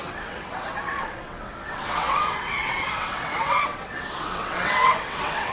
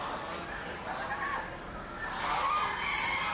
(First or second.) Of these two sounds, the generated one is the first